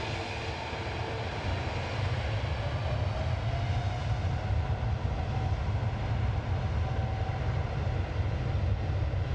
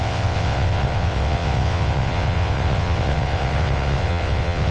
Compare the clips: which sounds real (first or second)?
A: first